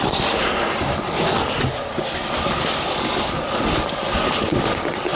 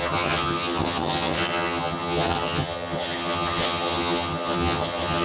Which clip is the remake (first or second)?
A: second